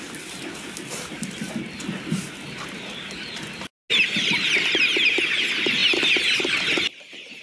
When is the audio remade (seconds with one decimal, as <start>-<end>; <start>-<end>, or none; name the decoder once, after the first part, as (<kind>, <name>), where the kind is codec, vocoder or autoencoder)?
none